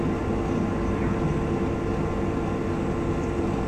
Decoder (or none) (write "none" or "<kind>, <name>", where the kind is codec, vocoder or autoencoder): none